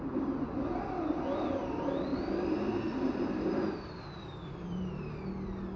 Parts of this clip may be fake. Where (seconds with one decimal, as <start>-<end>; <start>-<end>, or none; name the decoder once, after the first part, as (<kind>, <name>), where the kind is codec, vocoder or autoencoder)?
2.1-4.9 (vocoder, BigVGAN v2)